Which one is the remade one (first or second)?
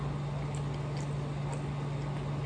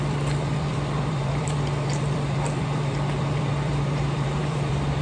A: second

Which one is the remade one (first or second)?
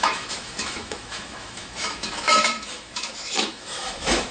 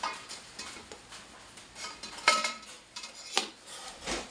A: first